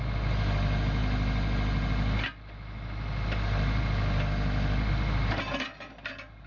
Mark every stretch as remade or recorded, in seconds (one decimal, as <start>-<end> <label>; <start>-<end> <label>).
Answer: 0.0-6.5 recorded